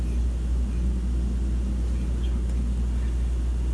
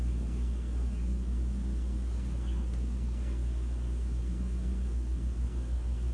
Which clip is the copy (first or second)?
second